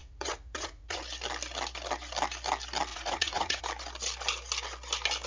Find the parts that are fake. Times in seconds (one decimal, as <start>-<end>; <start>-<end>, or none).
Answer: 0.0-1.0; 2.9-3.6